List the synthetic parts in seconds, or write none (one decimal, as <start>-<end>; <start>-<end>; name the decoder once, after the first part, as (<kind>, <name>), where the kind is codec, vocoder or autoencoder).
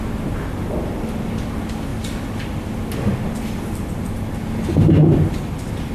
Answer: none